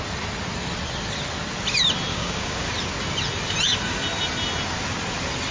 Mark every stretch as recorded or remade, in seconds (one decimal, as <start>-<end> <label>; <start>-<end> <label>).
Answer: 0.0-2.1 recorded; 2.1-2.7 remade; 2.7-5.5 recorded